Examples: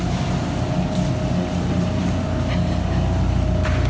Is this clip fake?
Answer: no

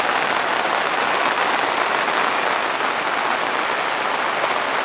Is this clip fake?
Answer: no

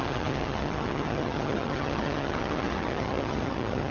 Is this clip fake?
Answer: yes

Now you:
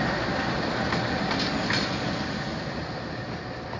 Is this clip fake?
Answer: no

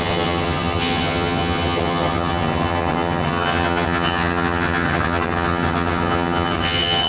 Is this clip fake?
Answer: yes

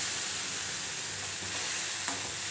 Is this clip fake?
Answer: no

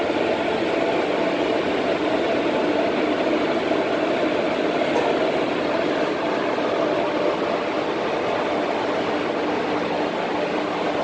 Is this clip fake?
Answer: no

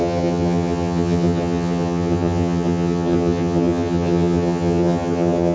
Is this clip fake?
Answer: yes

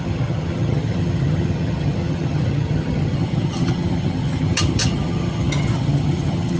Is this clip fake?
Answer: yes